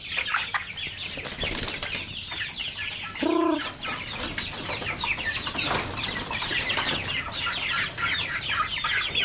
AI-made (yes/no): no